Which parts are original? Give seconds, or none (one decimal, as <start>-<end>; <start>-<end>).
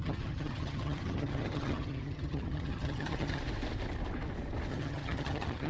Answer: 3.4-4.7